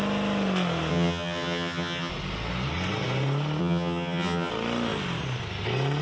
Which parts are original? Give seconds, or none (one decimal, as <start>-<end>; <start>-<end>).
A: 0.0-0.9; 2.1-3.6; 4.5-6.0

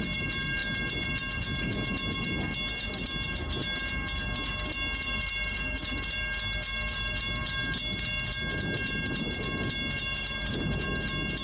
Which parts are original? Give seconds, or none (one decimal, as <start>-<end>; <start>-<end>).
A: 0.0-11.4